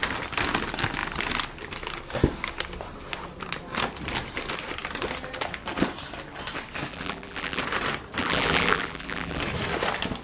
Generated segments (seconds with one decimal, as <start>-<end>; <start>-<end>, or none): 6.9-7.6; 8.2-9.4